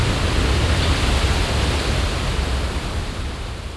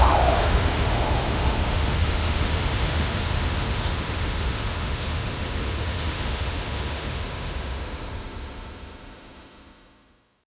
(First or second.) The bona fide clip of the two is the first